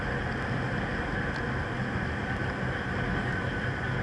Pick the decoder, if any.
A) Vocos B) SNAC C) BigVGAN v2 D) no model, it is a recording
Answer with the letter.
D